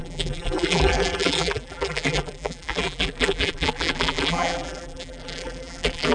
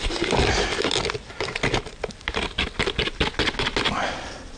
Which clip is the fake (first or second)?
first